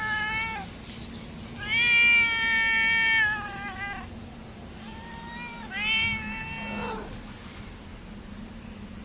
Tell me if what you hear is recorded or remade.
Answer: recorded